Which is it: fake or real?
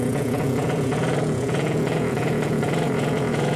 fake